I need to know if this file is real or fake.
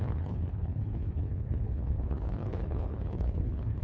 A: fake